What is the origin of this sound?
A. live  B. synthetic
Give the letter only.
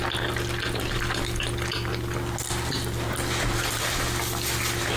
A